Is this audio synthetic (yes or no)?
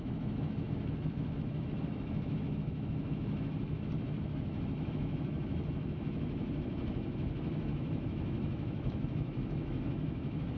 yes